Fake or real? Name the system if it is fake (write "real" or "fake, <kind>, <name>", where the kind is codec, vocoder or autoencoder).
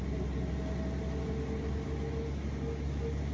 real